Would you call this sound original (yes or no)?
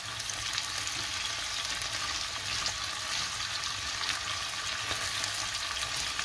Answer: yes